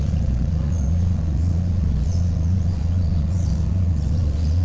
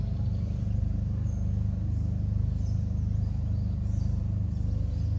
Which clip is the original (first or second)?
second